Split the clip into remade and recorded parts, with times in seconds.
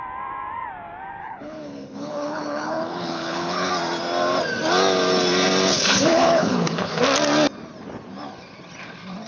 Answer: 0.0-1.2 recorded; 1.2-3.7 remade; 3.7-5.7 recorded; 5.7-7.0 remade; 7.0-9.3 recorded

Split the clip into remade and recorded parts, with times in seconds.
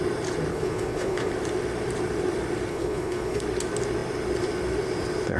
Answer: 0.0-0.5 recorded; 0.5-1.3 remade; 1.3-2.7 recorded; 2.7-3.4 remade; 3.4-5.4 recorded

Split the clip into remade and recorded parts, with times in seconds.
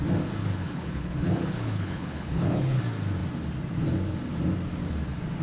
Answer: 0.0-0.4 recorded; 0.4-2.8 remade; 2.8-5.4 recorded